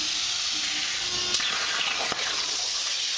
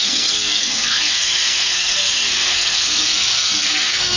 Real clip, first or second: first